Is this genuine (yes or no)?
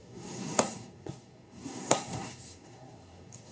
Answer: no